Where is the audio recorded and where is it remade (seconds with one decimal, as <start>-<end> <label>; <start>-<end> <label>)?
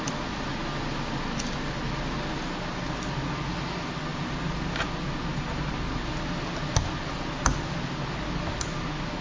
0.0-9.2 recorded